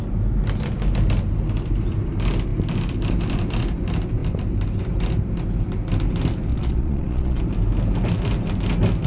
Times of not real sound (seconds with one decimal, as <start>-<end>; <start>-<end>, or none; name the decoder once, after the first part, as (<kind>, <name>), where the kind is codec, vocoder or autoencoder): 6.5-7.4 (vocoder, Vocos)